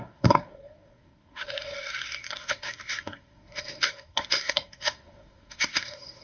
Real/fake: fake